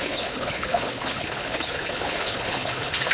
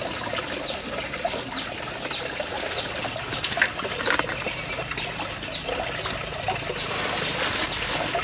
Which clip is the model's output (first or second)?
first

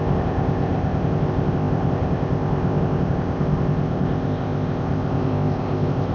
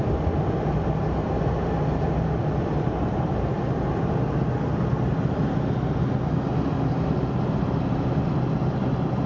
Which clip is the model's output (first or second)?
first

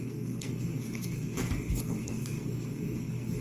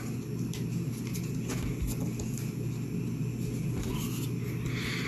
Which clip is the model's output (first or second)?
first